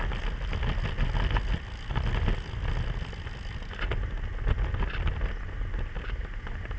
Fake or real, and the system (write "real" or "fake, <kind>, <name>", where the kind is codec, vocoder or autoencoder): real